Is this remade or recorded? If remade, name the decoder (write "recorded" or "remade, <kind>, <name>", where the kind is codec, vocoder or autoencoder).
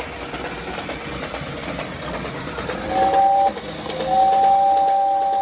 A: recorded